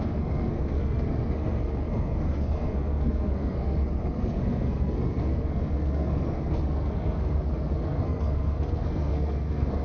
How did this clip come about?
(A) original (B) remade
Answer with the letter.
B